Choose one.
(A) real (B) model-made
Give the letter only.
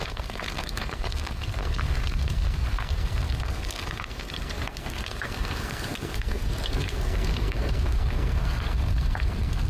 B